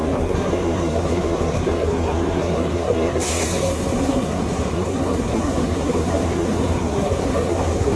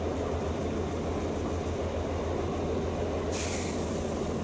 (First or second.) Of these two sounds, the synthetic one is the first